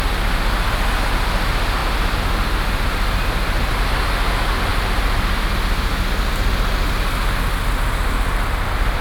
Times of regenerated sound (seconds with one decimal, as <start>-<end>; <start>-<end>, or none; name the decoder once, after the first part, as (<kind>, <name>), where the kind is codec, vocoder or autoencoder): none